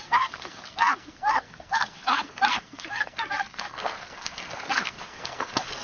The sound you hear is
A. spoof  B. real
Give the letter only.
A